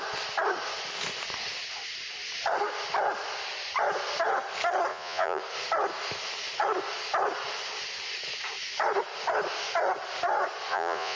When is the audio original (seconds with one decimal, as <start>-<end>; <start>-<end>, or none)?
0.0-4.9; 5.4-10.7